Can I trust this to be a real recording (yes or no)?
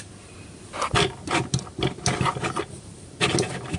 yes